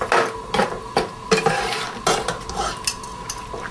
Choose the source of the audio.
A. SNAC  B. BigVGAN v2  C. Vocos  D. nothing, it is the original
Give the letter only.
D